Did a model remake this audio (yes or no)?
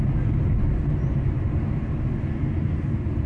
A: no